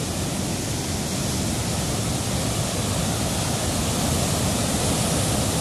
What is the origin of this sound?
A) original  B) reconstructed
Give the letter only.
A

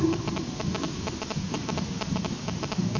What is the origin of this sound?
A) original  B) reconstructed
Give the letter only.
B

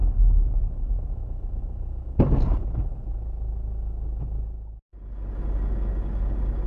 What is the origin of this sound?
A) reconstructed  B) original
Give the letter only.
B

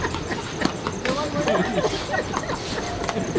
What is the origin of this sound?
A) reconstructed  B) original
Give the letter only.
B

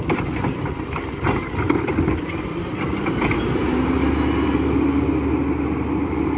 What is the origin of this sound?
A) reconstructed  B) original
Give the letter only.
B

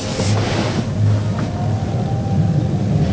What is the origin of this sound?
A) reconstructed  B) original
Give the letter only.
B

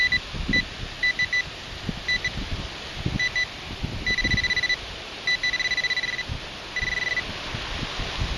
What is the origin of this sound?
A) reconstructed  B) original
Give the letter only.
B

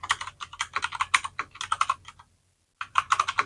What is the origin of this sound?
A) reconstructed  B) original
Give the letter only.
B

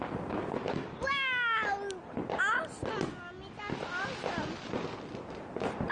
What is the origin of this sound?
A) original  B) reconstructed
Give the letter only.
A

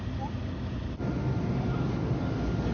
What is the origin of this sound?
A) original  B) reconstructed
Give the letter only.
A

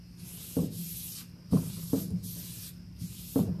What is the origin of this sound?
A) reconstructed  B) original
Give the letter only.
B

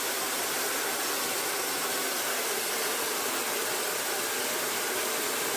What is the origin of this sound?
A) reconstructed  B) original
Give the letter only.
B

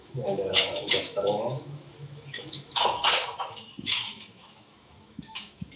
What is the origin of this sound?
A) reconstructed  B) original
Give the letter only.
A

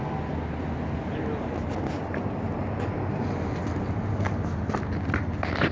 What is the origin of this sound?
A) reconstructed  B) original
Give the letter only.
B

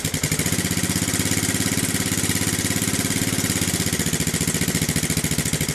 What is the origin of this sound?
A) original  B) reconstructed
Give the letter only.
A